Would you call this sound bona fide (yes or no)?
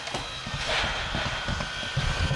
yes